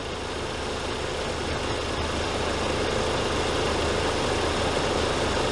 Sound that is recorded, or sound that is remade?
recorded